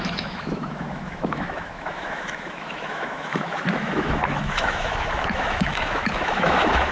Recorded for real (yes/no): no